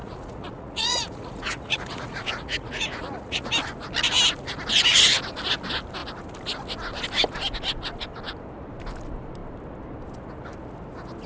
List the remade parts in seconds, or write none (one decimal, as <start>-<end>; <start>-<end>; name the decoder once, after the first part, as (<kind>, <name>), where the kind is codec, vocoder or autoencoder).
0.0-3.5 (vocoder, Vocos)